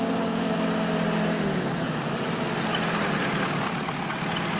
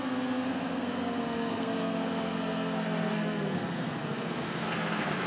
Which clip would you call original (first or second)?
first